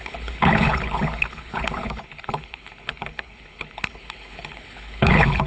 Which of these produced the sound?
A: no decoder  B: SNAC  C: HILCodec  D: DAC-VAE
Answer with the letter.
C